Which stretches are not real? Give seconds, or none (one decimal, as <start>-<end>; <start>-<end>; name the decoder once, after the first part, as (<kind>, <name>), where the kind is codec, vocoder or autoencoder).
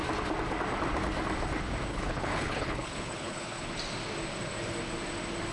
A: 1.9-3.7 (codec, HILCodec)